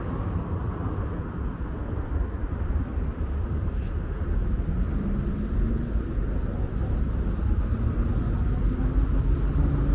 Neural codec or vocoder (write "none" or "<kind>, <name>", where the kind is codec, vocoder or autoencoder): none